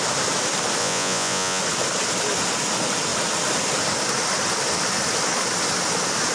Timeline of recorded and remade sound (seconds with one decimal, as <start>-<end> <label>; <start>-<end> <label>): 0.0-0.8 recorded; 0.8-1.6 remade; 1.6-6.3 recorded